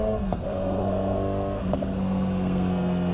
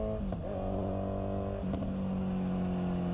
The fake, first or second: first